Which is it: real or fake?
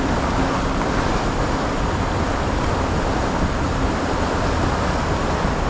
real